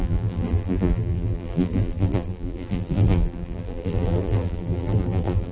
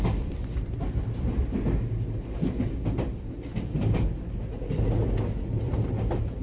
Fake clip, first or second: first